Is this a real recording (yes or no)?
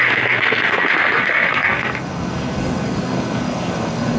no